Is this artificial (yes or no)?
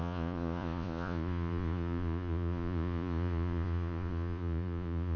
yes